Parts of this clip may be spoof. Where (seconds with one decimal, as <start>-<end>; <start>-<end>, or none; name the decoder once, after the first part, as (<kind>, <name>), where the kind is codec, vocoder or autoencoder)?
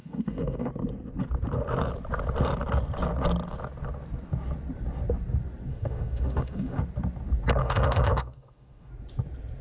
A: 0.0-0.7 (autoencoder, DAC-VAE); 5.7-6.8; 7.6-8.9